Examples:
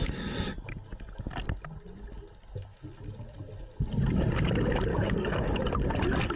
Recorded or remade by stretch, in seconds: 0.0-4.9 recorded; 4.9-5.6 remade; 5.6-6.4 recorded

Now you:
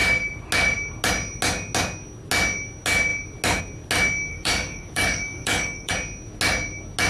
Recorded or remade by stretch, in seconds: 0.0-4.3 recorded; 4.3-5.9 remade; 5.9-7.1 recorded

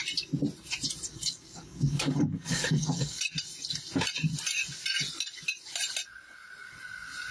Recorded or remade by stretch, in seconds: 0.0-1.1 recorded; 1.1-3.2 remade; 3.2-7.3 recorded